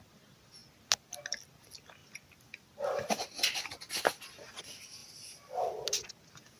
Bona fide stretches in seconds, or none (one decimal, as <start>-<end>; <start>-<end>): 0.0-5.0; 5.7-6.6